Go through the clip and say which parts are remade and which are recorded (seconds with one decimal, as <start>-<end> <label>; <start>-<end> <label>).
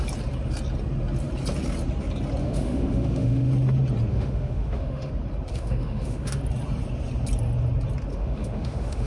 0.0-2.4 recorded; 2.4-3.5 remade; 3.5-4.1 recorded; 4.1-5.1 remade; 5.1-5.5 recorded; 5.5-6.4 remade; 6.4-8.1 recorded; 8.1-9.1 remade